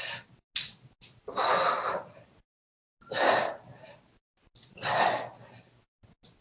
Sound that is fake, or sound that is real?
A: real